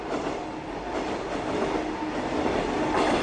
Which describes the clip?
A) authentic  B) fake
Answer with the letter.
A